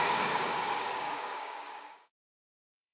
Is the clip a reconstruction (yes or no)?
yes